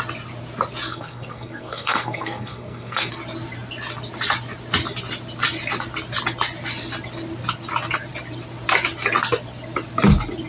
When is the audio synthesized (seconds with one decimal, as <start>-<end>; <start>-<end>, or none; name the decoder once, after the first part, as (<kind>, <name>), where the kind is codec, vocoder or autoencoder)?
0.9-3.1 (codec, SNAC)